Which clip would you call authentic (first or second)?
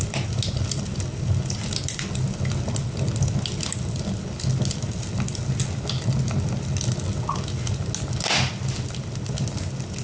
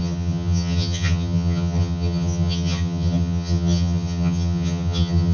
first